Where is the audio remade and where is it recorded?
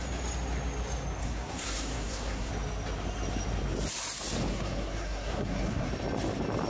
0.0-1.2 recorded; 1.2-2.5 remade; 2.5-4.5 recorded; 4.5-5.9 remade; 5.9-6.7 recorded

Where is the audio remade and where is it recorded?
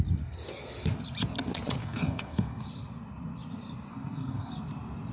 0.0-1.8 recorded; 1.8-2.7 remade; 2.7-3.9 recorded; 3.9-4.5 remade; 4.5-5.1 recorded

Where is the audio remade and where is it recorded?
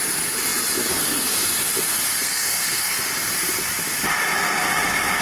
0.0-2.1 recorded; 2.1-3.0 remade; 3.0-5.2 recorded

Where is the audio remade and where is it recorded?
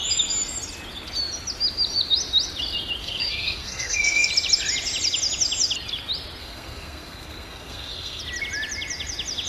0.0-3.0 recorded; 3.0-4.3 remade; 4.3-6.4 recorded; 6.4-8.2 remade; 8.2-9.5 recorded